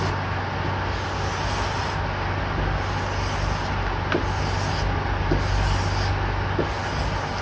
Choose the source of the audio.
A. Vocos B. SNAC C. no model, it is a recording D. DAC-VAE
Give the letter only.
C